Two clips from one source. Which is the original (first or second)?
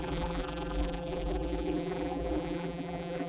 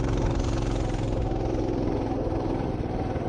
second